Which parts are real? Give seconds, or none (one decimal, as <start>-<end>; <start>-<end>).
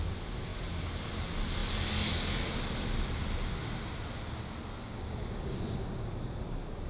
0.0-4.8